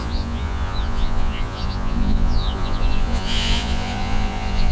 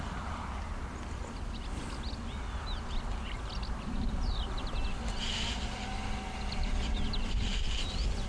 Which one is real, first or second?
second